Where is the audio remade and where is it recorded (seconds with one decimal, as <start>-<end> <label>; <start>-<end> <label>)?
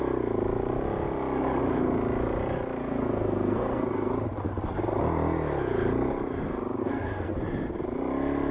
0.0-2.8 recorded; 2.8-4.1 remade; 4.1-6.8 recorded; 6.8-7.3 remade; 7.3-8.5 recorded